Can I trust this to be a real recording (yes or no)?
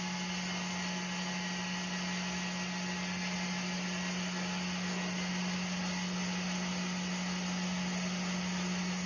yes